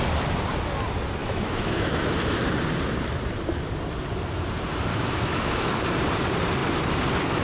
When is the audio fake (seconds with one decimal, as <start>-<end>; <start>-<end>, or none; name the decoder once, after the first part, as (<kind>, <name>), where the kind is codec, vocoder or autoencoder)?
1.2-2.4 (autoencoder, DAC-VAE); 4.9-5.7